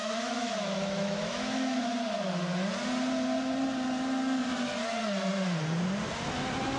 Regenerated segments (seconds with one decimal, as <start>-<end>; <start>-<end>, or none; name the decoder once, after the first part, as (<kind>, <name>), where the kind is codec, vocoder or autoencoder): 0.0-1.8 (autoencoder, DAC-VAE)